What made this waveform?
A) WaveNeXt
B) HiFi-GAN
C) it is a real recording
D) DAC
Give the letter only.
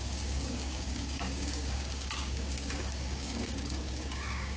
D